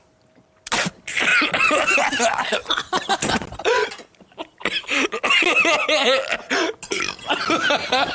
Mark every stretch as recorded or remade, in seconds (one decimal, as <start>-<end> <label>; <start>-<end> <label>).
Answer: 0.0-2.6 recorded; 2.6-5.1 remade; 5.1-8.1 recorded